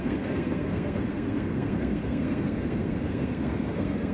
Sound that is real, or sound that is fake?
fake